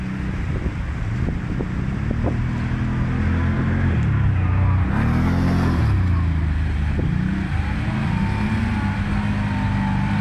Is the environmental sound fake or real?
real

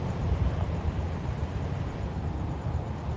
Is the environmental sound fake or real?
real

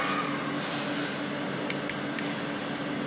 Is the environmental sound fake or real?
real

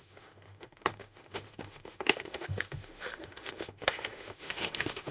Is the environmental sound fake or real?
fake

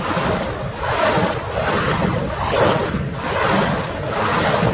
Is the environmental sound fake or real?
real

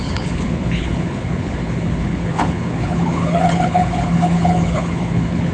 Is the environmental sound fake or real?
fake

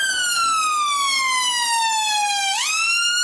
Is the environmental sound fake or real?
real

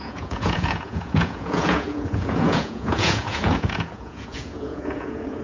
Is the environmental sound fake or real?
fake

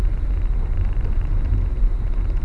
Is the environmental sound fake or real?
fake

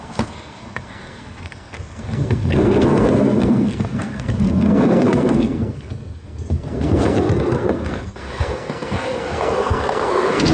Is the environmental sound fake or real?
fake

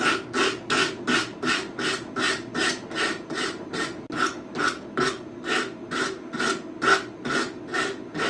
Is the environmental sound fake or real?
real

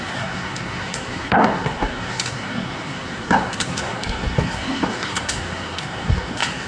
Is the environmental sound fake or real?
fake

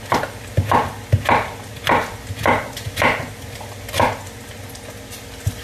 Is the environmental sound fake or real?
real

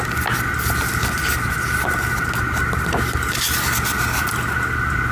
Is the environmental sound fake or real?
real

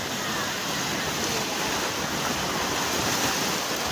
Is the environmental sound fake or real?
real